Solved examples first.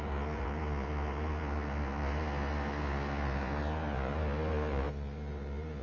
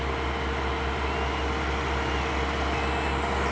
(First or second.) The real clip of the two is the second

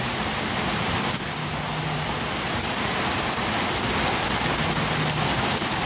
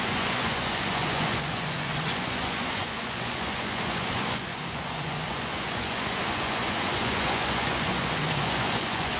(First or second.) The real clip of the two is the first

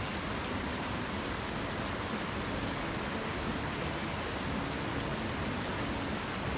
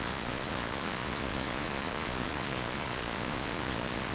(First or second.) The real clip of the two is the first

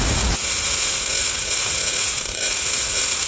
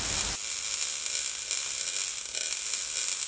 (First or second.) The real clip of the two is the second